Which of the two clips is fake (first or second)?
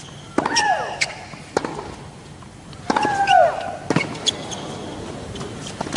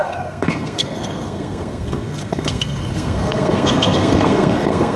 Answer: second